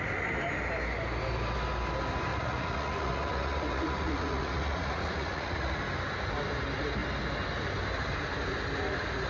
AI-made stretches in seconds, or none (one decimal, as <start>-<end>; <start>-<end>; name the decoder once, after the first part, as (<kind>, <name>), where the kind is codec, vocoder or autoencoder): 2.3-5.8 (vocoder, Vocos)